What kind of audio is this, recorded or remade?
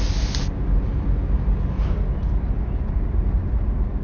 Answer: recorded